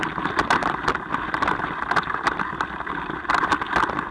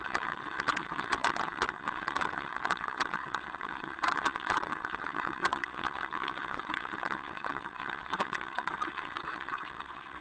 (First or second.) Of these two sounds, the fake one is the second